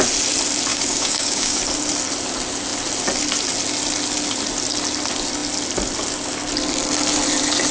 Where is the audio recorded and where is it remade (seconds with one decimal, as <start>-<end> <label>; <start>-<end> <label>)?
0.0-0.7 recorded; 0.7-1.6 remade; 1.6-7.7 recorded